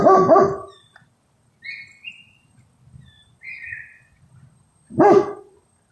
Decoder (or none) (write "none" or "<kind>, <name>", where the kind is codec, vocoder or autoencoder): none